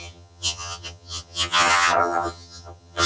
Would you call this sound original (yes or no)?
no